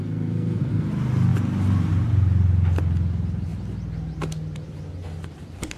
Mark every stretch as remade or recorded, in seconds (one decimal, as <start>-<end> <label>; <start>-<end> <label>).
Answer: 0.0-0.9 remade; 0.9-5.8 recorded